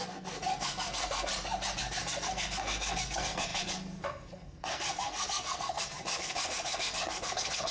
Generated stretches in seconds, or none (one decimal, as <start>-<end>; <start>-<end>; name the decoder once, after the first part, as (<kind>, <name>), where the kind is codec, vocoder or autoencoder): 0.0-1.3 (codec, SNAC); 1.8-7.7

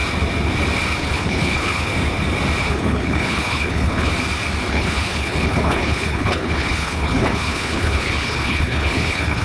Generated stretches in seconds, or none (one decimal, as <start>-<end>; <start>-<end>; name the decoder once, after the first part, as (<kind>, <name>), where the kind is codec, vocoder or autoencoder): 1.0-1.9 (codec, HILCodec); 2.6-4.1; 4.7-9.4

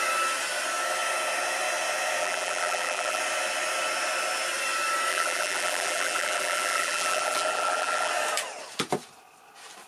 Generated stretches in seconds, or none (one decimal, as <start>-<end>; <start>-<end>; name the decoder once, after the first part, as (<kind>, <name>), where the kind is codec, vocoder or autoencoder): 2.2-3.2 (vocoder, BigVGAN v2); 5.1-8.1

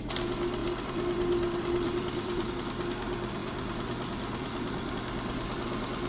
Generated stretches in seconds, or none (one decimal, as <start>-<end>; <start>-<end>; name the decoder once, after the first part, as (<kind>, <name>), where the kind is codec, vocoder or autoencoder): 0.6-2.5 (vocoder, BigVGAN v2); 3.4-4.9

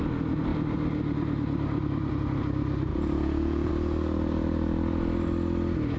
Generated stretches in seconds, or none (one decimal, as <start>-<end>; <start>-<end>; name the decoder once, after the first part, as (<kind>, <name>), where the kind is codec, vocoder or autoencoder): 2.9-3.7 (vocoder, Vocos)